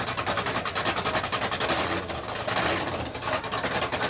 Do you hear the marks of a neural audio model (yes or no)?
no